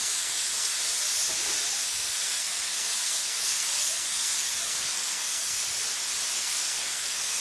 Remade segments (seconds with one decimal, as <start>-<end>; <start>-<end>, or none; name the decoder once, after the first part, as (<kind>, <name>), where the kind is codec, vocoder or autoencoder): 0.0-0.7 (codec, SNAC); 1.8-5.6; 6.4-7.4